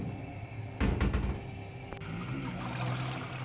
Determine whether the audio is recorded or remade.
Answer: recorded